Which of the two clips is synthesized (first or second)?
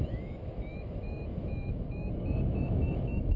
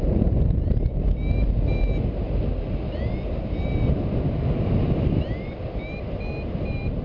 first